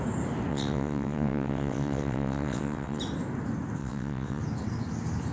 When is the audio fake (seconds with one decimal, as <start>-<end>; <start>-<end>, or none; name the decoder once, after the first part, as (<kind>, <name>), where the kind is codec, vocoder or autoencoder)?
0.5-3.0 (vocoder, WaveNeXt); 3.8-4.4